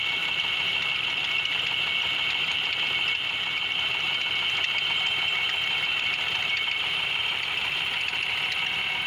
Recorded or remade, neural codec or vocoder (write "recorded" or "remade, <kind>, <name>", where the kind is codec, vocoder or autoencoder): recorded